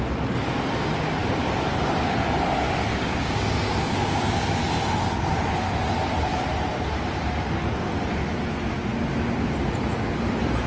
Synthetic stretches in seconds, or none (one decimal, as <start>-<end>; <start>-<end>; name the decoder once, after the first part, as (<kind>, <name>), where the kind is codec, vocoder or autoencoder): 2.9-4.7 (codec, DAC)